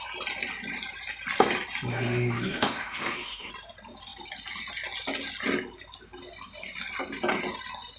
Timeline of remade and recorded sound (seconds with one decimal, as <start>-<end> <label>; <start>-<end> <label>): 0.0-1.9 recorded; 1.9-3.5 remade; 3.5-8.0 recorded